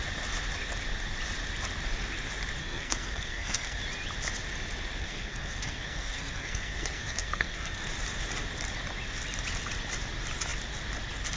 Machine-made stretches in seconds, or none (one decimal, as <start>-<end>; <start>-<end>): 2.6-3.8; 5.0-7.9